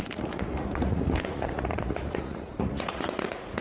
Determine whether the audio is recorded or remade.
remade